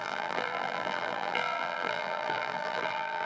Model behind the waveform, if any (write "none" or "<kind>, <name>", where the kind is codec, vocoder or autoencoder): vocoder, BigVGAN v2